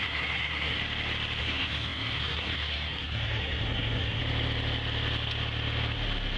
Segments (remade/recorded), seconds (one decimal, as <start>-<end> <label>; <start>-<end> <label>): 0.0-0.8 remade; 0.8-1.4 recorded; 1.4-4.2 remade; 4.2-6.4 recorded